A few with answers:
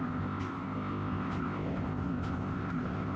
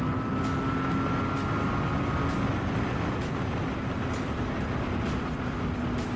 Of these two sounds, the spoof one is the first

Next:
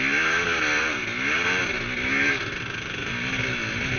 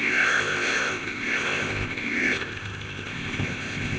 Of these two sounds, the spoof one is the second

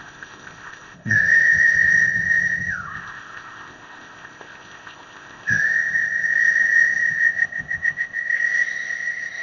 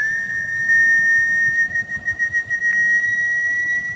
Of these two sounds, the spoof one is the first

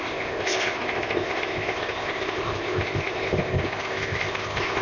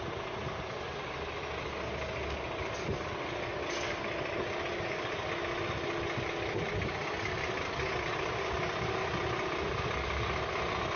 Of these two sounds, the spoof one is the first